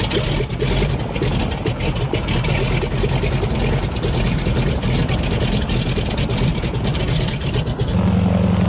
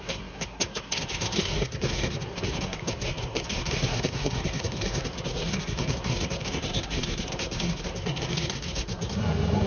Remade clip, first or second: second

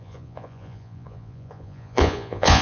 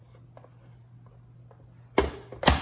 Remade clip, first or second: first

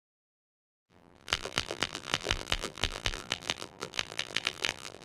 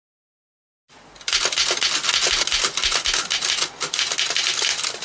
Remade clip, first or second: first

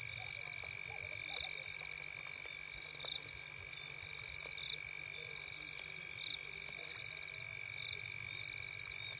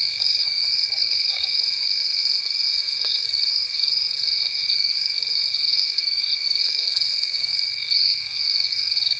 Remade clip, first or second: second